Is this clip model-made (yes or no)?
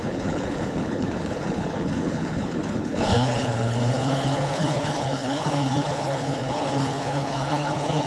yes